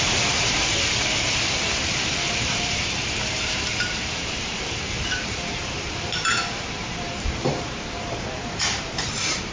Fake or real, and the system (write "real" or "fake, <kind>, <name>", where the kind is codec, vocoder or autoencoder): fake, vocoder, BigVGAN v2